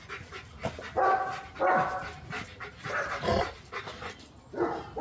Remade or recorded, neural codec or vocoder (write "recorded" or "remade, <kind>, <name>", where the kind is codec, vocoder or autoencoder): recorded